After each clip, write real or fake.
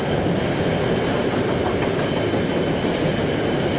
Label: real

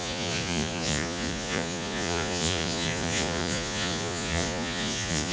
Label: fake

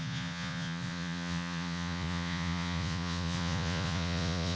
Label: fake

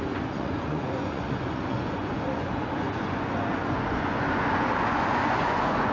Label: fake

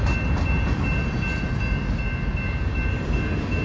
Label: real